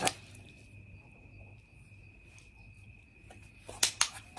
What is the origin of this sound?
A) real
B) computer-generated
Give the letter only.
A